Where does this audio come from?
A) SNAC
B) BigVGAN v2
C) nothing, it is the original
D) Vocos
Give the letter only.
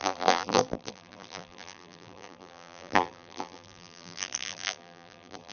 B